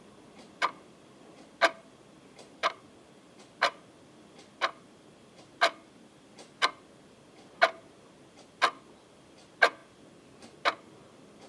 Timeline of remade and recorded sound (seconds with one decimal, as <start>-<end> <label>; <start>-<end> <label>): 0.0-11.5 recorded